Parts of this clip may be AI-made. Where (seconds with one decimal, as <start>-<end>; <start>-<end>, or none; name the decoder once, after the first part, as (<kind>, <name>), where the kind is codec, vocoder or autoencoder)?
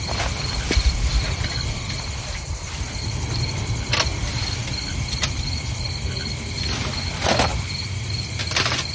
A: none